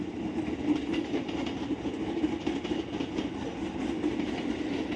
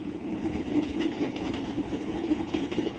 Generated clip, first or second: second